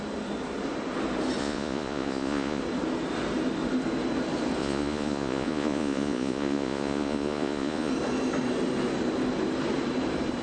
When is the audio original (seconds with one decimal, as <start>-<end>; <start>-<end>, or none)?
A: 0.0-1.4; 2.6-4.6; 7.9-10.4